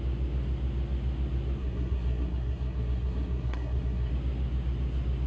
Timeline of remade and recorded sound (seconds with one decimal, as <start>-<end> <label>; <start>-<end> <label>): 0.0-1.6 recorded; 1.6-4.1 remade; 4.1-5.3 recorded